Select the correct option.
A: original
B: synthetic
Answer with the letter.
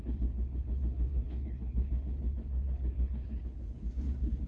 B